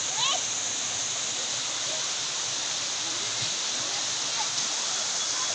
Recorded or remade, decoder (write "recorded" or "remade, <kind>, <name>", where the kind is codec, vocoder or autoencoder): recorded